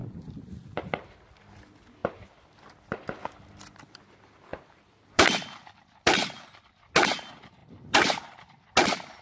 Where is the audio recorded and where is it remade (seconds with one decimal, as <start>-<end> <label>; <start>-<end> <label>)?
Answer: 0.0-0.8 remade; 0.8-4.5 recorded; 4.5-6.9 remade; 6.9-7.6 recorded; 7.6-8.2 remade; 8.2-9.2 recorded

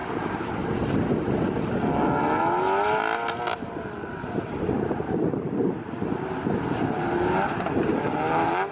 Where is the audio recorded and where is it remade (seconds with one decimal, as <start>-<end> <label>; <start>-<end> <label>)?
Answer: 0.0-8.7 recorded

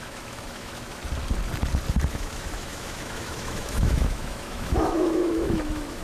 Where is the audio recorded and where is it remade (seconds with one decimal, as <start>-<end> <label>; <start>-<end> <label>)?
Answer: 0.0-1.0 remade; 1.0-2.1 recorded; 2.1-6.0 remade

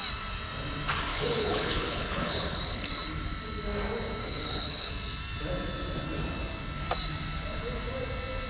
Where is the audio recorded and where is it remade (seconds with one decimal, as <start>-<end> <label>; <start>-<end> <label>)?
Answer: 0.0-1.1 recorded; 1.1-2.9 remade; 2.9-4.2 recorded; 4.2-4.9 remade; 4.9-8.5 recorded

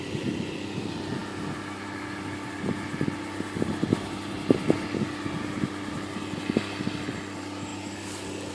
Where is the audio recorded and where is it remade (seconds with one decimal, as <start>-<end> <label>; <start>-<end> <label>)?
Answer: 0.0-8.5 recorded

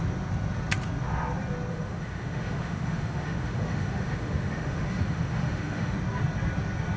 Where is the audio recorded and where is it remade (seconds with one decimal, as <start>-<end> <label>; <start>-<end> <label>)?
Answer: 0.0-1.7 recorded; 1.7-5.9 remade; 5.9-7.0 recorded